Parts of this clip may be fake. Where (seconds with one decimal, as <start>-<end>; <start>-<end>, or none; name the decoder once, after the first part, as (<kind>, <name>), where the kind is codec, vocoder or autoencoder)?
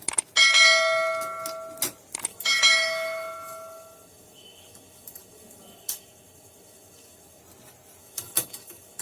2.3-7.4 (autoencoder, DAC-VAE); 8.0-9.0